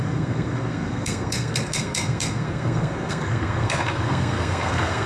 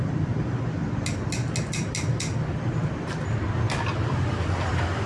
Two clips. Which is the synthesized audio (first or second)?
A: first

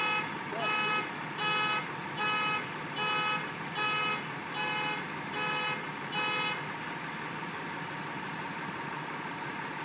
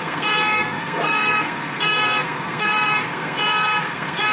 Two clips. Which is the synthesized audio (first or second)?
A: second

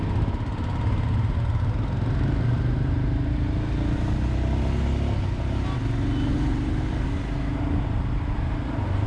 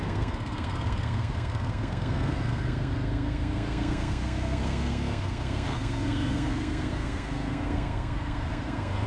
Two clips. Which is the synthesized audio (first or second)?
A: second